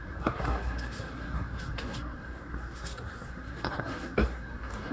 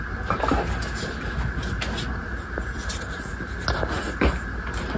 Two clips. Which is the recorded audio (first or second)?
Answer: second